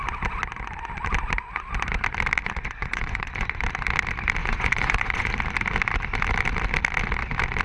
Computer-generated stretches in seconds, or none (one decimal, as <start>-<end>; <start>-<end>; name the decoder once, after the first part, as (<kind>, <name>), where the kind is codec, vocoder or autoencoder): 2.4-3.6 (vocoder, Vocos); 4.4-5.3